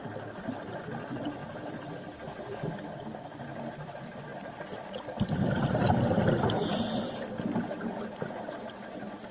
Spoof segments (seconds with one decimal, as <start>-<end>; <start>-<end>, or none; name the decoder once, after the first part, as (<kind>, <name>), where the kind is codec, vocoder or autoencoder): 0.0-1.4 (vocoder, BigVGAN v2); 1.9-4.3; 5.3-9.3